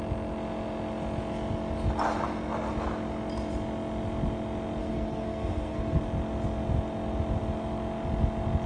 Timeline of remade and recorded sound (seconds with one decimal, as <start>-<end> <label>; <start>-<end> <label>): 0.0-4.8 recorded; 4.8-6.0 remade; 6.0-8.7 recorded